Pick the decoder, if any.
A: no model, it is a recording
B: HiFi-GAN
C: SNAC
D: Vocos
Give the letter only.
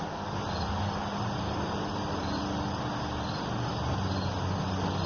A